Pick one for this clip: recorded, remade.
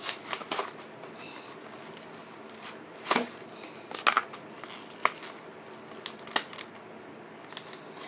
recorded